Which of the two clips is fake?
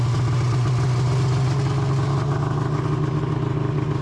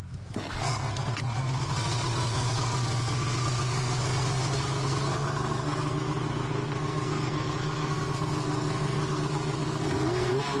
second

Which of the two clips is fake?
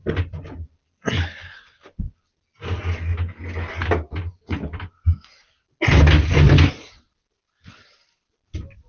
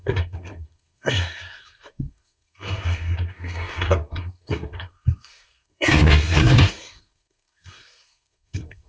second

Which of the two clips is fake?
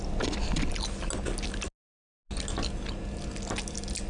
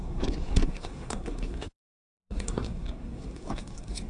second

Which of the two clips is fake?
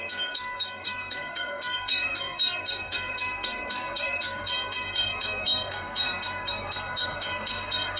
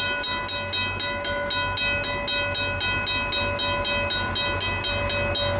first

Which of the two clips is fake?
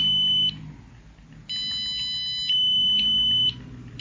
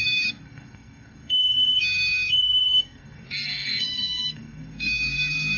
second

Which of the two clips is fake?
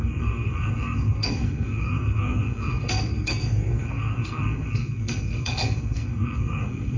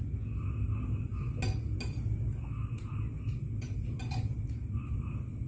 first